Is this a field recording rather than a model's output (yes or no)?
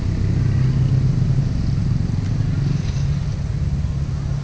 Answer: yes